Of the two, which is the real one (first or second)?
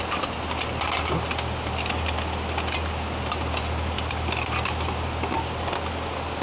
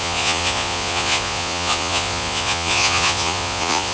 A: first